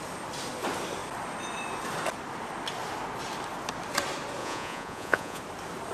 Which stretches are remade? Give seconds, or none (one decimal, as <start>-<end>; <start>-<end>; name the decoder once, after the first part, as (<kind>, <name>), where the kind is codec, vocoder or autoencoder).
4.4-5.4 (vocoder, Vocos)